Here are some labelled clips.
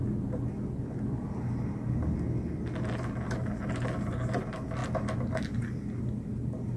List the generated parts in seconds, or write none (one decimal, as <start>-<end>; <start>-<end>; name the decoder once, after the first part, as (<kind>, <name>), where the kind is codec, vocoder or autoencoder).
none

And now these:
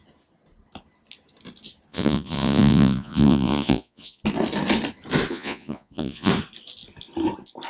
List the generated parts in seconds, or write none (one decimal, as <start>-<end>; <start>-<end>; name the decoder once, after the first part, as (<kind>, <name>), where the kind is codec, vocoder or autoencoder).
1.9-4.2 (vocoder, Vocos); 5.3-6.3

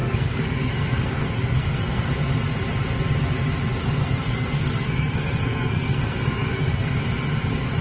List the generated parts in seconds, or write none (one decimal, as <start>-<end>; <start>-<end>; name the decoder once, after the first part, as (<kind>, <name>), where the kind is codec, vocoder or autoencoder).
0.0-2.1 (codec, SNAC); 3.8-7.0